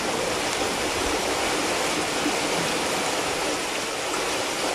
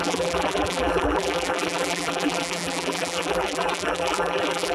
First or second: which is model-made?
second